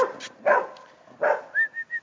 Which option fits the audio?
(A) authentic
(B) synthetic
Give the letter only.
A